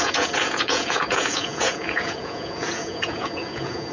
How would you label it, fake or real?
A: fake